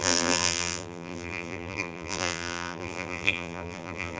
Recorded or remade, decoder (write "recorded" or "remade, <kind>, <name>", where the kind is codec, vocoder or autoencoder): remade, vocoder, BigVGAN v2